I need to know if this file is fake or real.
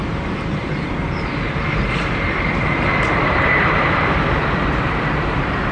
fake